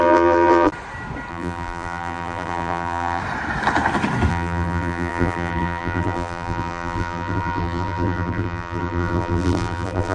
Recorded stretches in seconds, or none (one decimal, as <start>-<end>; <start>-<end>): 0.7-1.3; 3.2-4.3